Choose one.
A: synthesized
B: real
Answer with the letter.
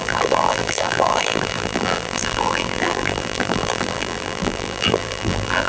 A